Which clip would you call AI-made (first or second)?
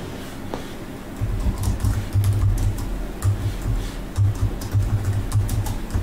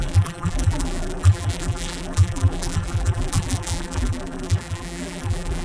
second